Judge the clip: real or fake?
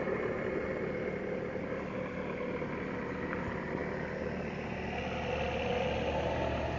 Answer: real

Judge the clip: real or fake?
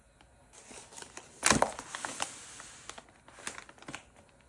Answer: real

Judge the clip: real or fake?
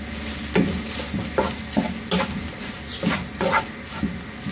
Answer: real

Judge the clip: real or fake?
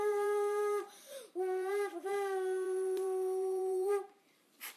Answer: fake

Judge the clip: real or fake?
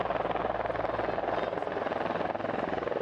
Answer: real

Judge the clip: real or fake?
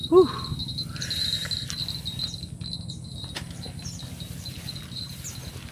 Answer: real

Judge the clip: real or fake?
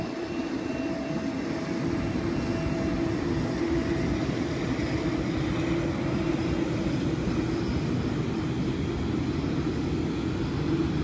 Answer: real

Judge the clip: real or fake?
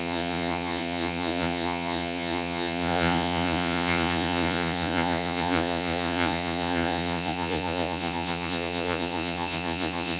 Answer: fake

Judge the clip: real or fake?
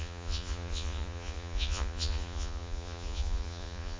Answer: fake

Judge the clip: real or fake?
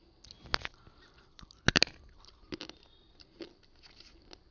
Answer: real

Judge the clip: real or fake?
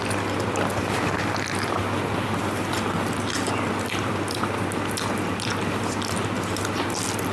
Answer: real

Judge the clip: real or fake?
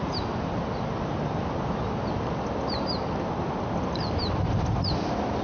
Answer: real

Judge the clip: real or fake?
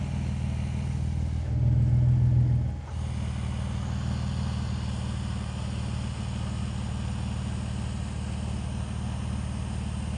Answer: real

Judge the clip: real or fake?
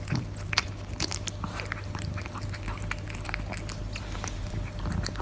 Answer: real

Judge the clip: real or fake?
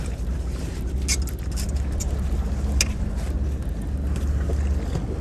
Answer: real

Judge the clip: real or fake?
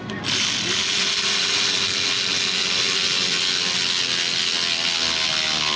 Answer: real